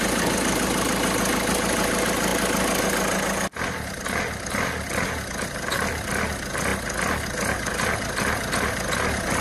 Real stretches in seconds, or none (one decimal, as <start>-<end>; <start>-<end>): 0.0-9.4